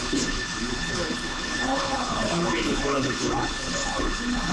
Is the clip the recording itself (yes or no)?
no